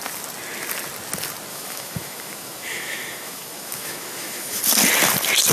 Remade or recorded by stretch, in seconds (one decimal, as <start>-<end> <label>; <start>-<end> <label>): 0.0-1.5 recorded; 1.5-4.6 remade; 4.6-5.5 recorded